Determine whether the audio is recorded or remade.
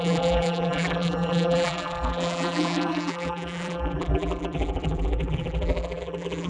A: remade